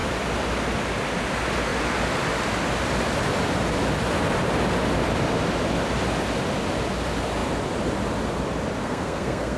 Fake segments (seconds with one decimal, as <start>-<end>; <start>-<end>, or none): 8.8-9.6